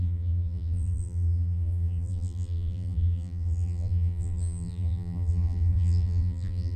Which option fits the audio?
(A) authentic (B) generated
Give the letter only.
B